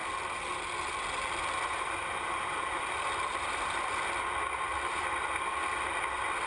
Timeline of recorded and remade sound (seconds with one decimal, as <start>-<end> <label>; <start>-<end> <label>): 0.0-3.9 remade; 3.9-4.7 recorded; 4.7-5.6 remade; 5.6-6.5 recorded